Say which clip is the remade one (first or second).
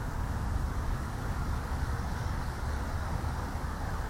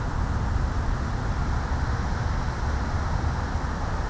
first